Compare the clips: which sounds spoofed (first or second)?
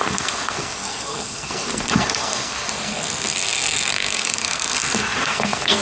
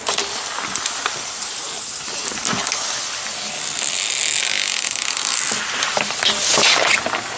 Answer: first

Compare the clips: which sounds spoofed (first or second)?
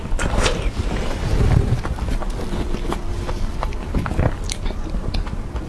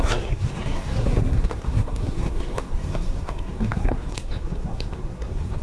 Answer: second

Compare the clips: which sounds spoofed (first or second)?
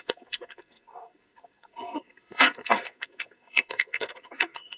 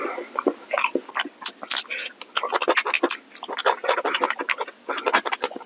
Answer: first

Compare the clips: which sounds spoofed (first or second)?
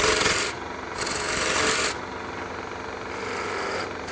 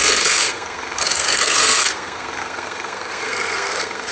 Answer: second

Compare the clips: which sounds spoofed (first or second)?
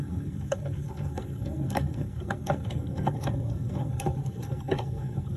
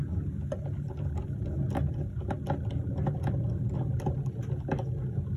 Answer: first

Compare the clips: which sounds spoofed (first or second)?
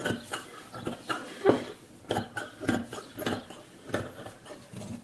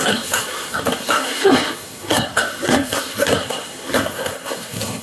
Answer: second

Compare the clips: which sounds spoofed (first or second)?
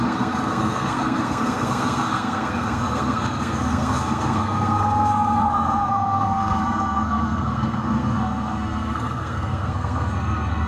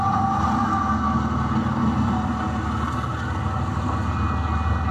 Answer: first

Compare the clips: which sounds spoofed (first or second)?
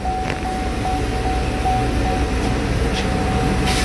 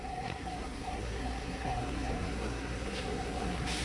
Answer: second